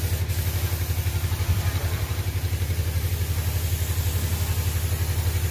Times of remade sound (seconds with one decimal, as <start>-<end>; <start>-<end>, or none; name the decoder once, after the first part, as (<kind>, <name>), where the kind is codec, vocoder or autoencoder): 1.8-3.1 (vocoder, BigVGAN v2)

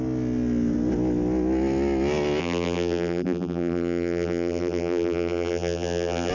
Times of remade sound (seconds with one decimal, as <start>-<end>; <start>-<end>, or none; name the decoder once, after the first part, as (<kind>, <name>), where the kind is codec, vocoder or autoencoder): 2.4-6.3 (vocoder, BigVGAN v2)

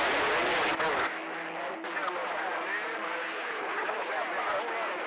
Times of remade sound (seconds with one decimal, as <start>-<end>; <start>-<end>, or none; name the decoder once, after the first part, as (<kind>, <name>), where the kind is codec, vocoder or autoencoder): 3.2-4.1 (codec, HILCodec)

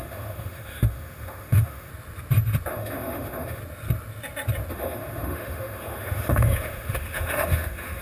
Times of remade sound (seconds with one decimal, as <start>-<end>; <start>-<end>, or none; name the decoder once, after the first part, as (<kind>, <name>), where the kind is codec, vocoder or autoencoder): 0.0-1.9 (autoencoder, DAC-VAE); 2.7-3.6; 4.7-8.0

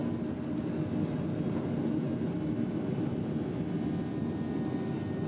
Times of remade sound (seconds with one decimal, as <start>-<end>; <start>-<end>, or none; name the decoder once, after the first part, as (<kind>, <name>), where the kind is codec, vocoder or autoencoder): none

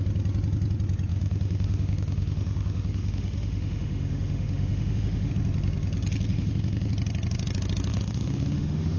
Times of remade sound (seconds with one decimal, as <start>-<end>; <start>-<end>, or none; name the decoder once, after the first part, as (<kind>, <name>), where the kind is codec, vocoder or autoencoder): 1.1-5.3 (autoencoder, DAC-VAE); 6.3-6.9; 7.9-9.0

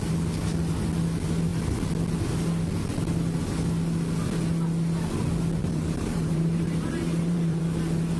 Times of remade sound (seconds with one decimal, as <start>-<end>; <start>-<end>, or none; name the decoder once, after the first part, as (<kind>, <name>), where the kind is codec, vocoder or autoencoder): 5.6-7.6 (vocoder, BigVGAN v2)